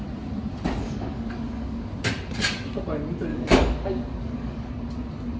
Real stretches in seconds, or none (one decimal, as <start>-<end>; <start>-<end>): 0.0-0.8; 1.9-3.3; 4.7-5.4